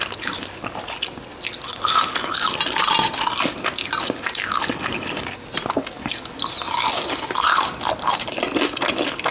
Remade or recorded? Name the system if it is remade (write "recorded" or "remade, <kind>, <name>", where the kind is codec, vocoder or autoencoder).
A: recorded